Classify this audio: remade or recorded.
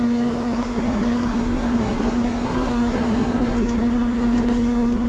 remade